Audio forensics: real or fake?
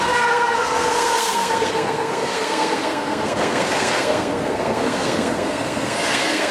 fake